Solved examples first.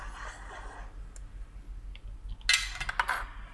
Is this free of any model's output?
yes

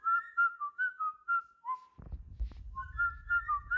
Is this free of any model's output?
yes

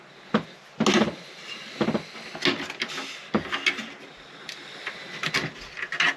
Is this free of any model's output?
yes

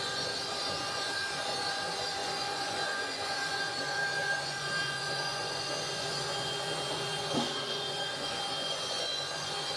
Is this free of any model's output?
no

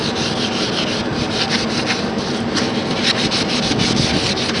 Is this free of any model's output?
yes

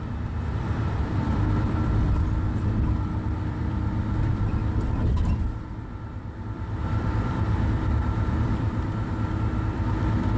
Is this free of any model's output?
no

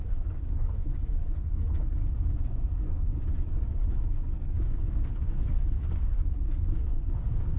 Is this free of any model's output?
no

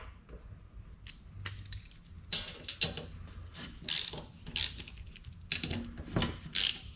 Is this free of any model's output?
yes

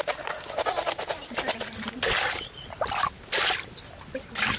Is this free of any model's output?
yes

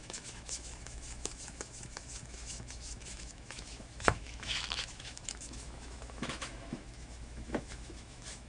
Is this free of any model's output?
no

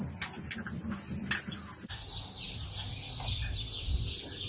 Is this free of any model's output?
yes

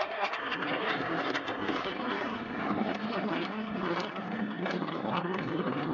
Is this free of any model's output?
no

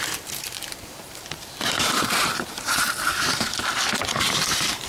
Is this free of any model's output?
no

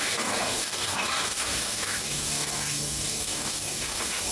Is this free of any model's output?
no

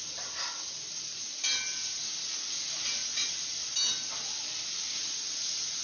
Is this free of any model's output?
yes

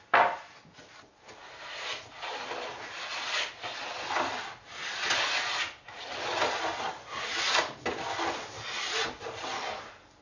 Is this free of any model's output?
yes